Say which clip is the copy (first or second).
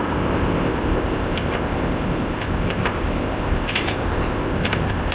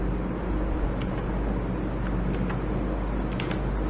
first